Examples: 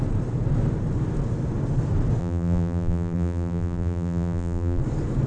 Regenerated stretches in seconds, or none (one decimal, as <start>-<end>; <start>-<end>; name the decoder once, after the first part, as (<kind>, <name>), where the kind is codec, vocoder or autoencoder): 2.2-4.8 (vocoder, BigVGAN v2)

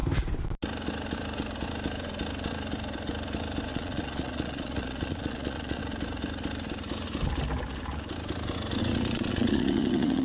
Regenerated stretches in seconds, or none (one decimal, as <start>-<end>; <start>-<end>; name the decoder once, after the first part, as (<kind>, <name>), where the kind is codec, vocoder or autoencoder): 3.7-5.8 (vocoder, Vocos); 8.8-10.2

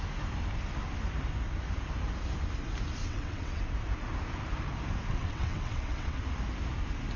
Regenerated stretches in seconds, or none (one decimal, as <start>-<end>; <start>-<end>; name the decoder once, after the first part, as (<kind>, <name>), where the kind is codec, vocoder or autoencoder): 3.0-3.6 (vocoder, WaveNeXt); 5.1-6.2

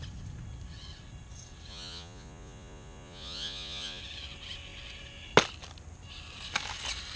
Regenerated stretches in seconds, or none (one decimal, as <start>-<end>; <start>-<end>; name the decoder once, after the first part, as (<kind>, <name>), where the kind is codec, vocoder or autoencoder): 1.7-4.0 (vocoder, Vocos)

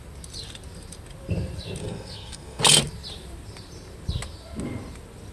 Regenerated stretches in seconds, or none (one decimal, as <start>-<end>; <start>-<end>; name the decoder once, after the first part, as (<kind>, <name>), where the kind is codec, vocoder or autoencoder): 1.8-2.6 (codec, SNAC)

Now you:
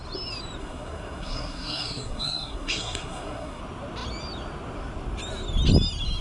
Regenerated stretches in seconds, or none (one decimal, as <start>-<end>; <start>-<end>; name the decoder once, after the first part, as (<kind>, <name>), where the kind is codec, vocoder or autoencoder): 0.6-3.6 (codec, SNAC)

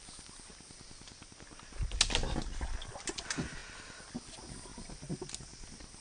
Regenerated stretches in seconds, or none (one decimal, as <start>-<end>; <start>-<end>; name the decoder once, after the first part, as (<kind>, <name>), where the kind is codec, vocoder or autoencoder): none

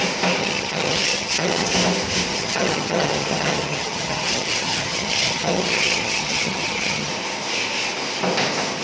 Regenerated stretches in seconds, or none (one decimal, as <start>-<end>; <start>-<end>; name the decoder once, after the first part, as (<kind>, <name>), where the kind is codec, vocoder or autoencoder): 0.4-1.7 (vocoder, HiFi-GAN); 2.3-7.1